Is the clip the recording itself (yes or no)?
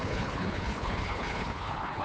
no